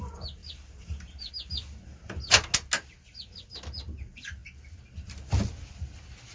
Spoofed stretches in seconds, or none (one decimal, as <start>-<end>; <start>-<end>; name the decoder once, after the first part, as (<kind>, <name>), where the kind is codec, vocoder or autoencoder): 0.4-1.3 (vocoder, BigVGAN v2)